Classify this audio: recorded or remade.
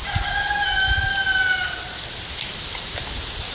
recorded